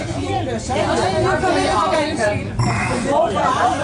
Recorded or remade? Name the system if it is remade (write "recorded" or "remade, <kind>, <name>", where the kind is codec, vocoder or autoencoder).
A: remade, vocoder, Vocos